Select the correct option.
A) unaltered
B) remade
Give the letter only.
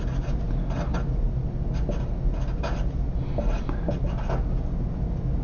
A